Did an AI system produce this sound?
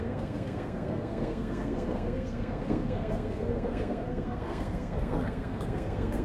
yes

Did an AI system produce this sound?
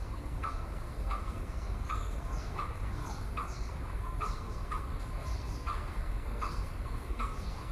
yes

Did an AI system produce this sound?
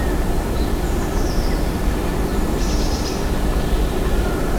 no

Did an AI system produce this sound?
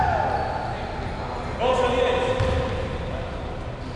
no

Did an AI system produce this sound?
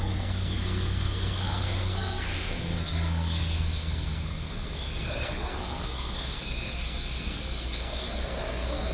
yes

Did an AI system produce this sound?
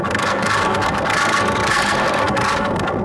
yes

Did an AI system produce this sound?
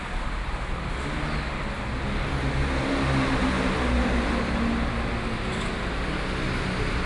no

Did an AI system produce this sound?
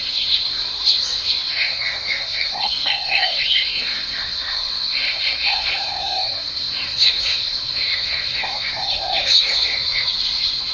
yes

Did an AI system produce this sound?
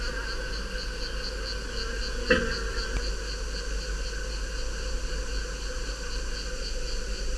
no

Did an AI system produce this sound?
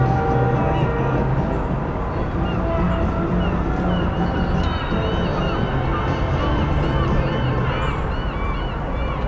no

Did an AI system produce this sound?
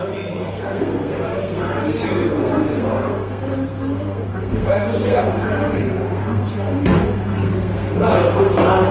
yes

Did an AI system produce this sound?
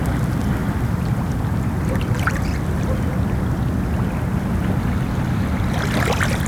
no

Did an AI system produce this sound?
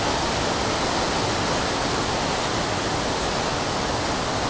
no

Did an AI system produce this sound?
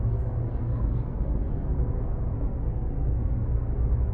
yes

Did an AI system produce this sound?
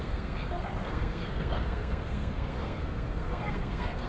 yes